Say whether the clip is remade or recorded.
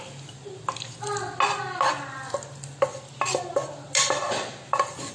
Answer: recorded